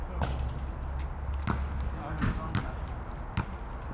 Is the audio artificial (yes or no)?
no